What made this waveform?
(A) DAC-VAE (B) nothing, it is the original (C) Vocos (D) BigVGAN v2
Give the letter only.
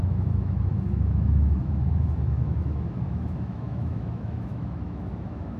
A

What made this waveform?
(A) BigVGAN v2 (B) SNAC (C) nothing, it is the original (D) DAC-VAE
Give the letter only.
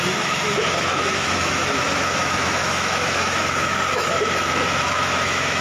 D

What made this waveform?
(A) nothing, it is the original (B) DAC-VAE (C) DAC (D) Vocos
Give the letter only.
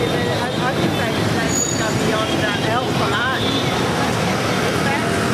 A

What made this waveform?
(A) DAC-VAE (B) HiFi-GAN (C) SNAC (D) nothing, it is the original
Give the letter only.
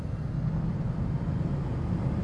D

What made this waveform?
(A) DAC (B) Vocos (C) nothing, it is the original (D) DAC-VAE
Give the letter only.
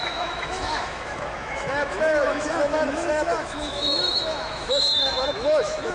D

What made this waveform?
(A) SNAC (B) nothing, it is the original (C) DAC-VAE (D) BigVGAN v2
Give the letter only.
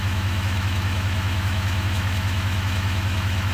C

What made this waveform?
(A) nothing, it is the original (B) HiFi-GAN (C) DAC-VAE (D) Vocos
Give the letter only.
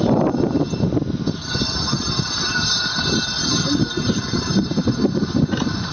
A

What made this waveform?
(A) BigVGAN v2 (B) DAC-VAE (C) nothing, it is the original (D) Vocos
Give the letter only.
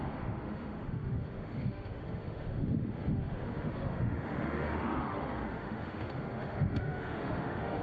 B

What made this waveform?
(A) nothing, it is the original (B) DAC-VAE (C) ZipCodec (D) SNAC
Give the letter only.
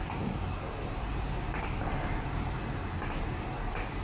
A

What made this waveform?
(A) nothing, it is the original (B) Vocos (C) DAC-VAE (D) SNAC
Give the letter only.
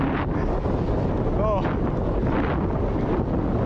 A